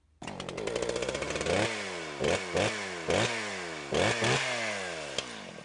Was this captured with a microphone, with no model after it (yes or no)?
yes